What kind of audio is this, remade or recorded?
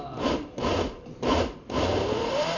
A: remade